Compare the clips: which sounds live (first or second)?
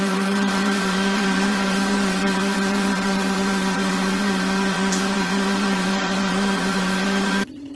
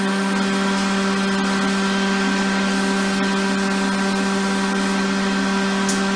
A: second